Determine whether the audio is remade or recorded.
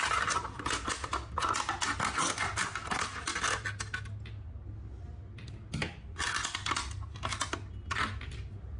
recorded